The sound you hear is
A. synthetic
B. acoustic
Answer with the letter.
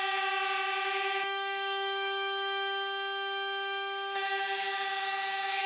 A